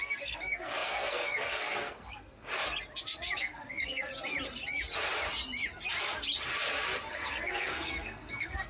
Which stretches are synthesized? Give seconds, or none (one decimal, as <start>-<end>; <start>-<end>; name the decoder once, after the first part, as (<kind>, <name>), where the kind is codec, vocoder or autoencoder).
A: 0.0-2.5 (codec, SNAC); 3.4-4.1; 7.1-8.7